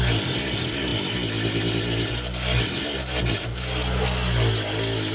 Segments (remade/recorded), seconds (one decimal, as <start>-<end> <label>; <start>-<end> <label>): 0.0-5.1 recorded